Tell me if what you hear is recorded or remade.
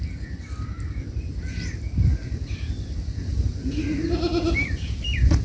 recorded